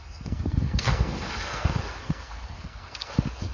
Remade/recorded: remade